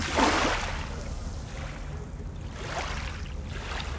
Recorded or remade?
recorded